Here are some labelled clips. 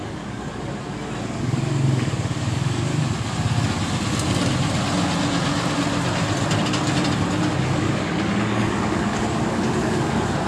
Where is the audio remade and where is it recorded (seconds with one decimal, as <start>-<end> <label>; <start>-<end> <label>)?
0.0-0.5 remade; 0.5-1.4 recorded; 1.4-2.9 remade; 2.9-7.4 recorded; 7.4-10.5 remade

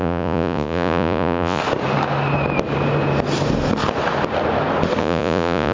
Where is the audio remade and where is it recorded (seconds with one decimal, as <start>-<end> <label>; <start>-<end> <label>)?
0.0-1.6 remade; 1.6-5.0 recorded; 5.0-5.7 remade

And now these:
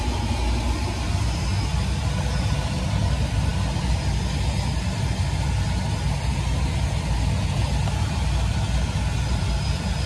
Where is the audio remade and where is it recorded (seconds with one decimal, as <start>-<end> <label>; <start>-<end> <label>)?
0.0-10.1 recorded

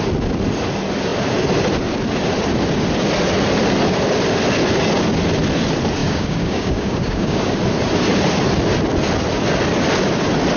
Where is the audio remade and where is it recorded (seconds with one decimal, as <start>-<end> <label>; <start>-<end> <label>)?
0.0-6.0 recorded; 6.0-7.5 remade; 7.5-10.6 recorded